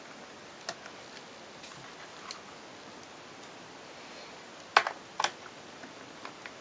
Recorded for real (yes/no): yes